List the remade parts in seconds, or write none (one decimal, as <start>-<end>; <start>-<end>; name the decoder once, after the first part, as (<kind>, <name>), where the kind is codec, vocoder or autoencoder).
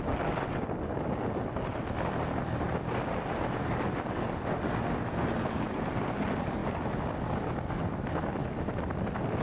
none